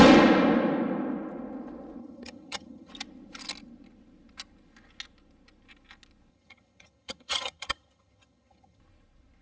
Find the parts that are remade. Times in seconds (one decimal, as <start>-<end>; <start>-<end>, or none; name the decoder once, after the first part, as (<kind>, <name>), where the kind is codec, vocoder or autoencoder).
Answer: 2.0-2.9 (vocoder, HiFi-GAN); 6.3-8.8